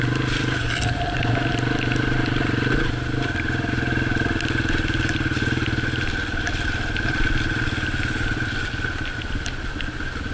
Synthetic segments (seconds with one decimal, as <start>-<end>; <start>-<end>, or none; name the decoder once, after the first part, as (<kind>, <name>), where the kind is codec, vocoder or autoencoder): none